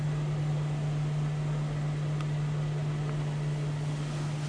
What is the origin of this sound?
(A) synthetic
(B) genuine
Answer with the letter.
B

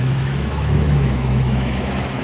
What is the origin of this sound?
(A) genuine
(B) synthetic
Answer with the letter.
B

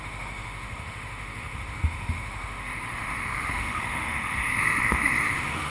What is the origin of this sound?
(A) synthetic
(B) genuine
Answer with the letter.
A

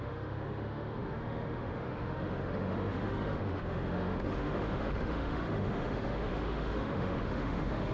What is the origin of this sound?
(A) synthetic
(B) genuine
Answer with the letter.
A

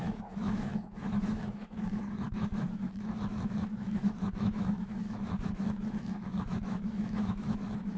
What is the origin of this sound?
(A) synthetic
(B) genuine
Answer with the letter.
A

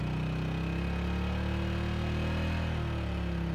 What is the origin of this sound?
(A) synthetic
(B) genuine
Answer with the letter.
B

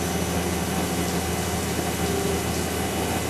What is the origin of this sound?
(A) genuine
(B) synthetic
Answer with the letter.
A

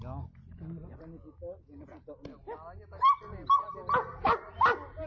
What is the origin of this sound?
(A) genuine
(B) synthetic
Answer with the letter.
A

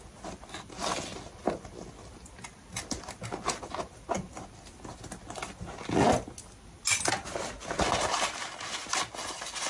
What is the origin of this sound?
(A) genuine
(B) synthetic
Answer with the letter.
A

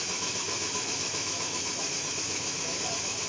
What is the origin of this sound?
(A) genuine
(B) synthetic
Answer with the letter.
B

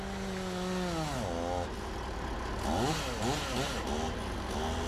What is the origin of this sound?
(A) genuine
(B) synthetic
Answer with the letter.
A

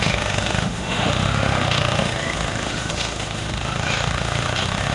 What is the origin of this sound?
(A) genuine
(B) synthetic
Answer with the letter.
B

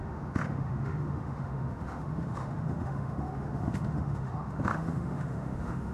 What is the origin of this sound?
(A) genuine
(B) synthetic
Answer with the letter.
B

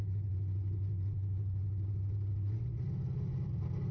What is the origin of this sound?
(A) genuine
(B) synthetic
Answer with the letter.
A